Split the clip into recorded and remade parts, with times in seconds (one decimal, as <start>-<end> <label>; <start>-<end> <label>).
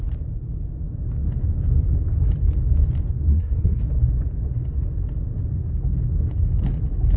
0.0-3.3 recorded; 3.3-3.8 remade; 3.8-7.2 recorded